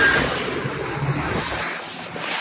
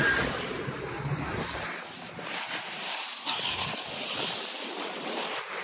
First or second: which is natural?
first